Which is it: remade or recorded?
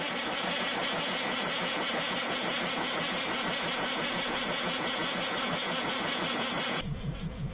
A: remade